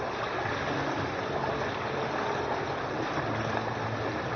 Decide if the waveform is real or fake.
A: real